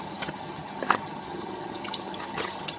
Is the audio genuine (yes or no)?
no